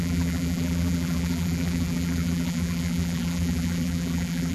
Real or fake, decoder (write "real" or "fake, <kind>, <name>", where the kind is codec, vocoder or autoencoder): fake, vocoder, BigVGAN v2